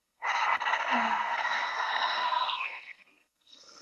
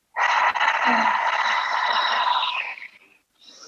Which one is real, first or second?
second